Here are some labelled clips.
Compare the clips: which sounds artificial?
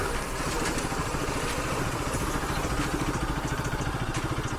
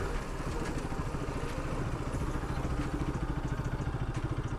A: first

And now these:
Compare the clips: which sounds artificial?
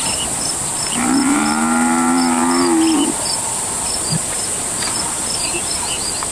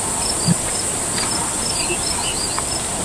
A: first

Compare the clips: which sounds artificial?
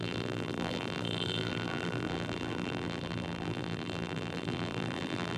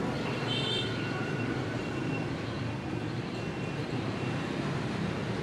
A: first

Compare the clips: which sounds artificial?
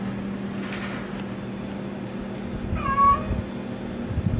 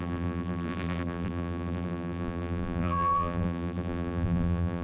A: second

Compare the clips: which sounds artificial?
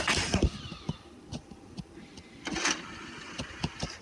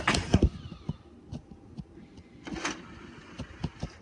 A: first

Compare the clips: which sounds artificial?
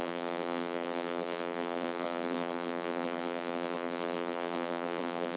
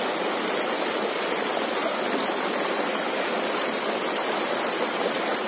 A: first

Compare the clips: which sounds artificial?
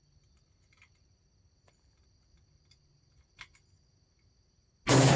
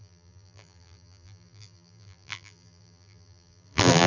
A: second